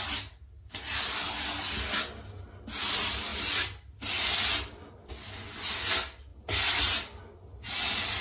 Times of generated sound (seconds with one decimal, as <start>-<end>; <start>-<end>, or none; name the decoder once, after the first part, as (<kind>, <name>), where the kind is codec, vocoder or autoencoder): none